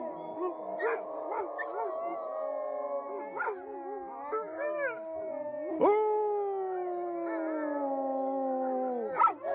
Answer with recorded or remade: recorded